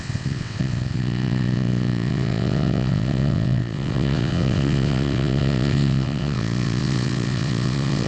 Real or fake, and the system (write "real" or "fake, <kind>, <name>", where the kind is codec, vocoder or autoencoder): fake, vocoder, WaveNeXt